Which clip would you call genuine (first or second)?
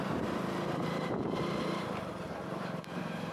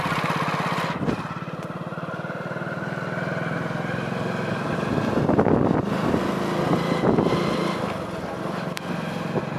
second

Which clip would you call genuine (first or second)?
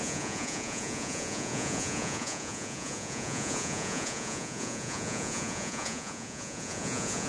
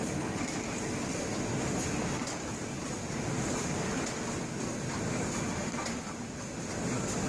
second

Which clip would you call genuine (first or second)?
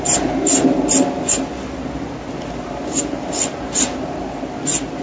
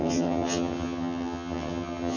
first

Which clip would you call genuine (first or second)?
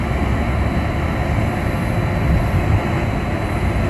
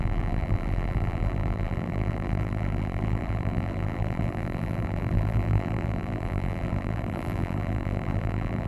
first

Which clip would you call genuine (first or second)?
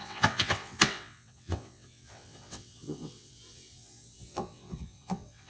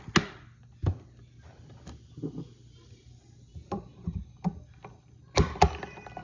second